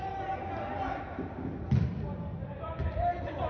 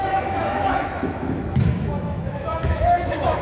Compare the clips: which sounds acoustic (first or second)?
first